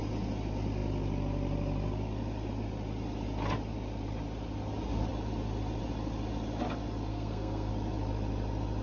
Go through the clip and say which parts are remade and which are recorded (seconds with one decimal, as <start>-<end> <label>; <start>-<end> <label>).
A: 0.0-7.1 recorded; 7.1-7.7 remade; 7.7-8.8 recorded

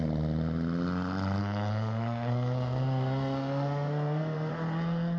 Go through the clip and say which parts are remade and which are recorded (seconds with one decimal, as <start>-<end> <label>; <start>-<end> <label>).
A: 0.0-1.4 recorded; 1.4-4.5 remade; 4.5-5.2 recorded

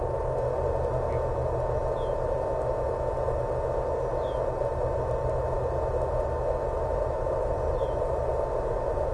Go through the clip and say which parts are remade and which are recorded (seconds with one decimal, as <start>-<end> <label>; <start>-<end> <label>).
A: 0.0-6.7 recorded; 6.7-9.1 remade